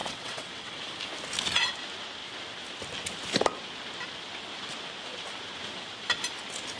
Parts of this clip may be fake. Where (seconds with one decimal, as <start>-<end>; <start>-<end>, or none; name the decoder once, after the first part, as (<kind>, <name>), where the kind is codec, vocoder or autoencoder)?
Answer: 0.0-0.8 (vocoder, WaveNeXt)